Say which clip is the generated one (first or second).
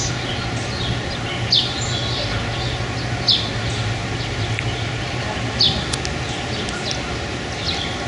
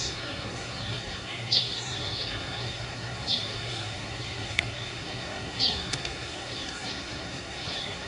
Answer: second